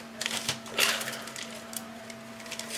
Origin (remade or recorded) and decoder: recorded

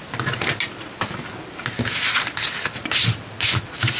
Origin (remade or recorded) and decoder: recorded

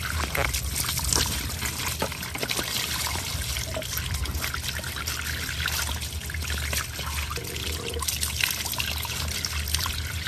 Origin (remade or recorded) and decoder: recorded